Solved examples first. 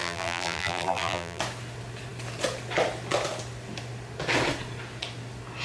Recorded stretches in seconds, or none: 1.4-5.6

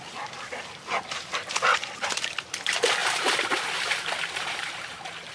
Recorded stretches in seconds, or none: 0.0-1.7; 2.2-3.0

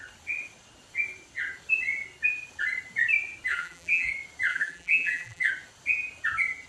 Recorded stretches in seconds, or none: 0.0-3.5; 4.1-4.5; 5.5-6.7

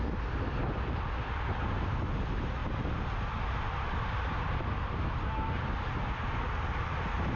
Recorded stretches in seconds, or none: 0.0-7.4

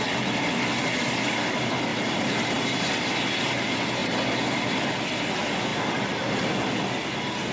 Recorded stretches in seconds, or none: 0.0-1.9; 2.9-5.7; 6.4-7.5

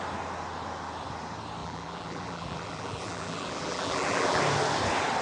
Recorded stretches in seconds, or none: 0.0-1.6; 4.4-5.2

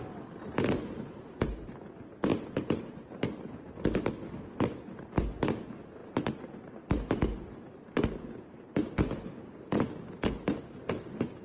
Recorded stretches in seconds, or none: 0.0-11.4

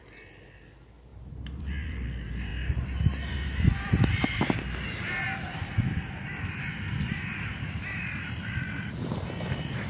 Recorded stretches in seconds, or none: 0.0-1.1; 2.1-9.9